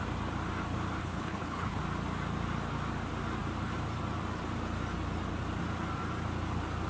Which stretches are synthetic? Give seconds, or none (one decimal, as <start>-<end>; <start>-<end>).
1.0-1.8